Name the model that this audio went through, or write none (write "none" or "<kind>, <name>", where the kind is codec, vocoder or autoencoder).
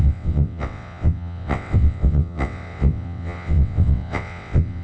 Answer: vocoder, WaveNeXt